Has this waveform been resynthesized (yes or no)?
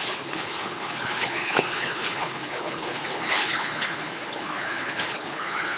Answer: yes